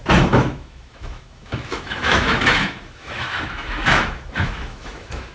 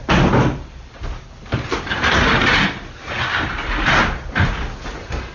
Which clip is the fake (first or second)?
first